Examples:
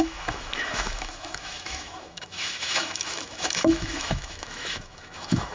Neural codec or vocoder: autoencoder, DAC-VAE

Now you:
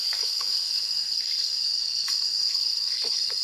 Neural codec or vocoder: codec, SNAC